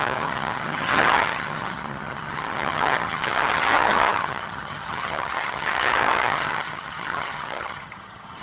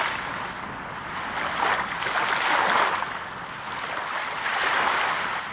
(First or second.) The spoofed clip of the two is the first